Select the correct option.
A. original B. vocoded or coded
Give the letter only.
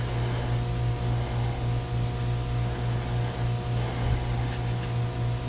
A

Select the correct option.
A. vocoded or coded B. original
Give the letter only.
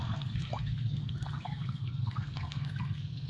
A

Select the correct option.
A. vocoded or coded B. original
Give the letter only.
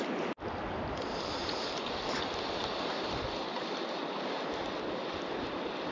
B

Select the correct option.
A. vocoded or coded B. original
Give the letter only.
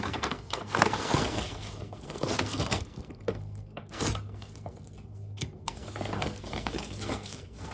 A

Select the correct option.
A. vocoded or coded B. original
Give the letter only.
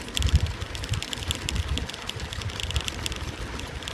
B